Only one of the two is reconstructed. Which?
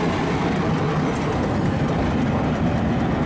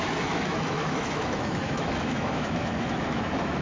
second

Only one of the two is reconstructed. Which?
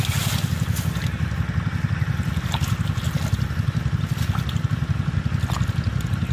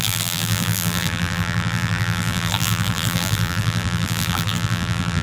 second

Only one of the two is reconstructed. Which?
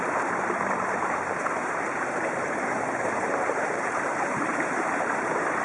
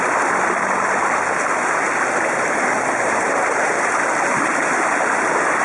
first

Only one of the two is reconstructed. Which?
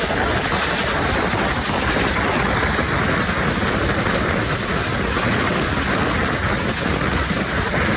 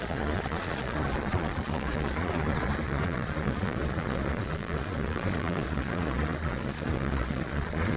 second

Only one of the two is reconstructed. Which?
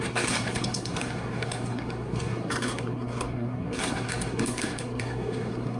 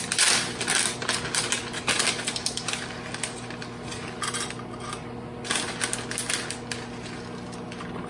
first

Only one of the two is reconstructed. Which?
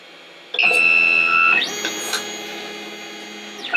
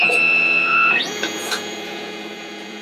second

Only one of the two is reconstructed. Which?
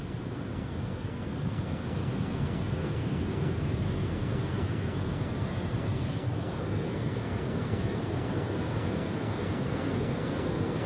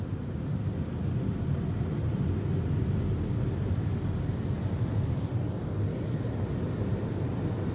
first